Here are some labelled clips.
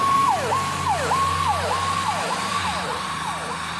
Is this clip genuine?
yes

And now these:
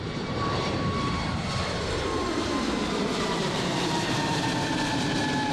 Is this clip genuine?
no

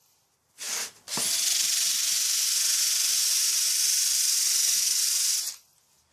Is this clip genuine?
yes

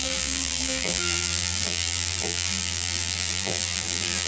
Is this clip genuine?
no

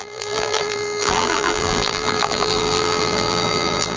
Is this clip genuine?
no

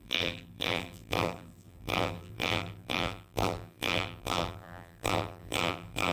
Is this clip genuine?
no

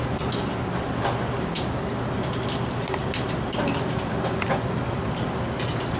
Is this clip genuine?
yes